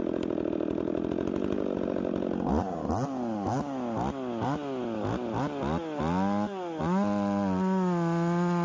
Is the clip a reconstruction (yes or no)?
no